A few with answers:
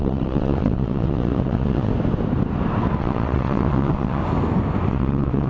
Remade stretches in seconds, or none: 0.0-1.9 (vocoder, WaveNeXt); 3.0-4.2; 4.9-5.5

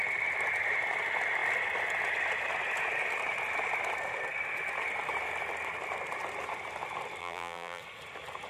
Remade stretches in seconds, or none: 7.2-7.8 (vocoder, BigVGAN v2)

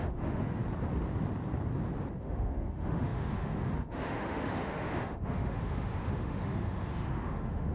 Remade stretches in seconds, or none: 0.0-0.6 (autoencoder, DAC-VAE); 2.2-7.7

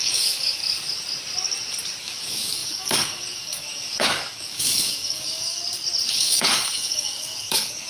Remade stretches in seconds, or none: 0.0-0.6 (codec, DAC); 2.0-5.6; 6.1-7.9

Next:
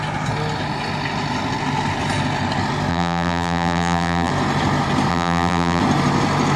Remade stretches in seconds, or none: 2.9-4.3 (vocoder, BigVGAN v2); 5.1-5.8

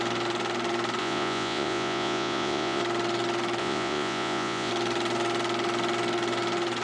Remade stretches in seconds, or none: 1.0-2.8 (vocoder, Vocos); 3.6-4.7

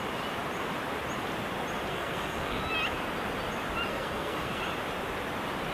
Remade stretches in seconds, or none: 1.9-2.6 (codec, SNAC); 3.9-4.6

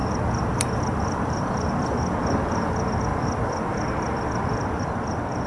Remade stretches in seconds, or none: 0.0-2.0 (vocoder, BigVGAN v2); 3.1-4.8